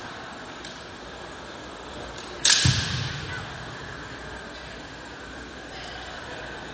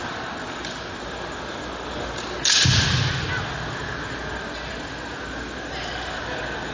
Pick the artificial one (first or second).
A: first